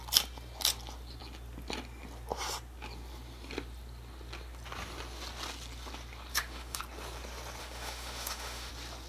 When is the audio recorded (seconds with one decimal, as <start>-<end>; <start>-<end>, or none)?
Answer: 0.0-6.3; 6.8-7.6; 8.7-9.1